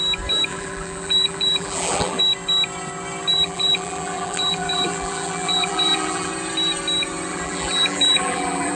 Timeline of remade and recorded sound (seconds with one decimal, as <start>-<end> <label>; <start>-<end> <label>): 0.0-0.5 recorded; 0.5-2.2 remade; 2.2-3.3 recorded; 3.3-6.3 remade; 6.3-7.3 recorded; 7.3-8.7 remade